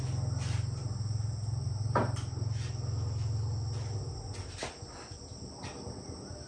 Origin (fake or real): real